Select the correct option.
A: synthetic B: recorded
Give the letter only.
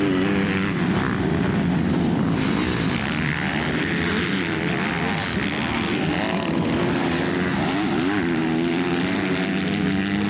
B